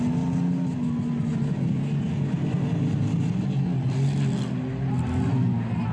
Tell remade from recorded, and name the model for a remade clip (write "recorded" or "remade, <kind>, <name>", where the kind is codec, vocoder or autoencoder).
recorded